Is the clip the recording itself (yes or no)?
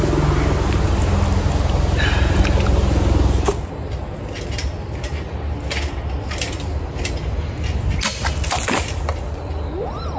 yes